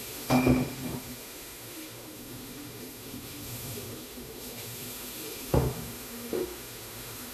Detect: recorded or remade remade